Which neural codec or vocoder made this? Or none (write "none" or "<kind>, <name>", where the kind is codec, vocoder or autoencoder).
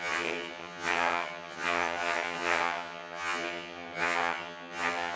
vocoder, HiFi-GAN